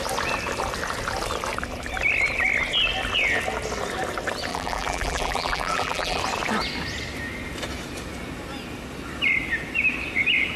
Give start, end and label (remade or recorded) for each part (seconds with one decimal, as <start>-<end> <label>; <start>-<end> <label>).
0.0-4.5 recorded; 4.5-6.2 remade; 6.2-10.6 recorded